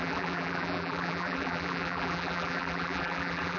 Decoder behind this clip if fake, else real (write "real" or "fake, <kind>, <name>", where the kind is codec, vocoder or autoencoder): fake, vocoder, BigVGAN v2